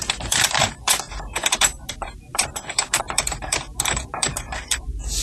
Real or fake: fake